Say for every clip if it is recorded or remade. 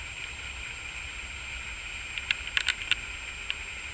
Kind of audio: recorded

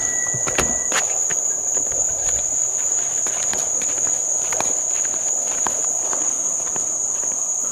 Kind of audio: recorded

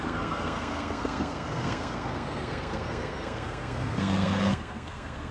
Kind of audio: remade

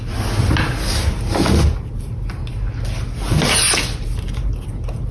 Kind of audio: recorded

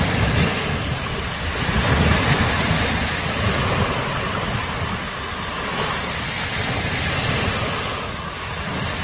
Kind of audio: recorded